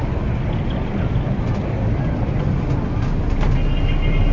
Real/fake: real